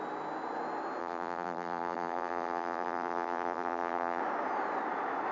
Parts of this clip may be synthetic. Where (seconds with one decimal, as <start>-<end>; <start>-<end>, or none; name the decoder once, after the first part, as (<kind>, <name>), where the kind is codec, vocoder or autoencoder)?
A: 1.0-4.2 (vocoder, BigVGAN v2)